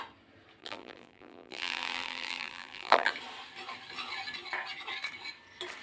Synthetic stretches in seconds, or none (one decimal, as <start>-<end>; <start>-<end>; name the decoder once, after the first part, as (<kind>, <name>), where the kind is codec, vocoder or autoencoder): 0.6-3.1 (vocoder, BigVGAN v2)